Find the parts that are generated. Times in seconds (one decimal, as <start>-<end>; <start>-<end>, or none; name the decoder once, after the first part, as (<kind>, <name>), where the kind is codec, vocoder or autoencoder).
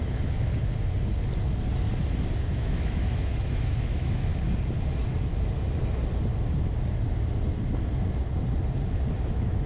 0.0-0.5 (autoencoder, DAC-VAE); 2.6-4.3; 9.2-9.7